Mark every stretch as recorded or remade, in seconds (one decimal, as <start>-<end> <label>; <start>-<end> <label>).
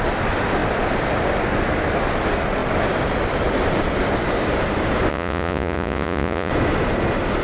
0.0-5.1 recorded; 5.1-6.5 remade; 6.5-7.4 recorded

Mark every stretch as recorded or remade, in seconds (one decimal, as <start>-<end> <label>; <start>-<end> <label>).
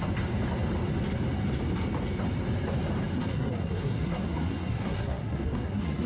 0.0-3.1 recorded; 3.1-6.1 remade